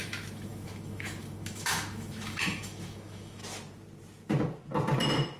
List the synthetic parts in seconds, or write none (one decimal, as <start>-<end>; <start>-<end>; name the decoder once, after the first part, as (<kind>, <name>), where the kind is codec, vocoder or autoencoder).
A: 0.0-3.4 (autoencoder, DAC-VAE)